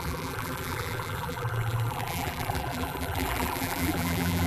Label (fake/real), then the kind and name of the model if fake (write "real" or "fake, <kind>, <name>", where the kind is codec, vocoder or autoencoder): fake, vocoder, BigVGAN v2